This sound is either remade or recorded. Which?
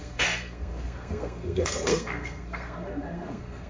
remade